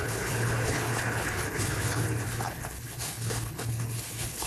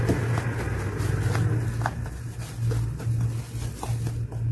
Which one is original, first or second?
second